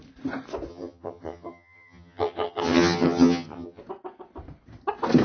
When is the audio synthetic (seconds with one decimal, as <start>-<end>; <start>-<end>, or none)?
0.7-3.8